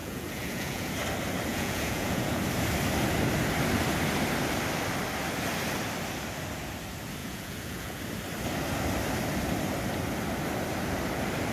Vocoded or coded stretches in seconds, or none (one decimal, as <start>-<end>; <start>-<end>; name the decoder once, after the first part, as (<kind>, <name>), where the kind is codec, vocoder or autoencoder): 0.0-0.9 (vocoder, Vocos); 1.5-2.4; 7.2-8.0